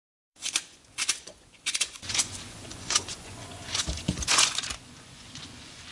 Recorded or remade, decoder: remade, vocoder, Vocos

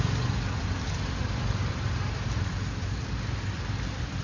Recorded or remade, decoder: recorded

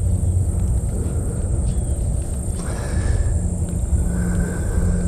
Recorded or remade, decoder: recorded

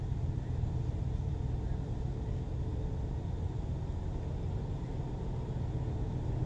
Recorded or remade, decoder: recorded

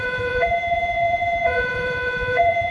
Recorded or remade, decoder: remade, vocoder, Vocos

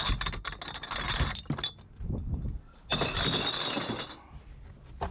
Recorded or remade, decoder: recorded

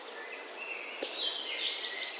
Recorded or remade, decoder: recorded